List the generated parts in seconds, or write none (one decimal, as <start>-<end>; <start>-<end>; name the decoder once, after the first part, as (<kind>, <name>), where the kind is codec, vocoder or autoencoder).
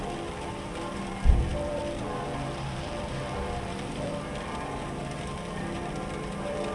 0.0-6.7 (vocoder, BigVGAN v2)